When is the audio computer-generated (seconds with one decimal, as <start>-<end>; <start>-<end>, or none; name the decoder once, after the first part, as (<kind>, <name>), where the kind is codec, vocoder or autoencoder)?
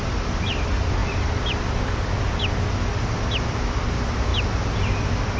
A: 1.0-1.6 (vocoder, BigVGAN v2)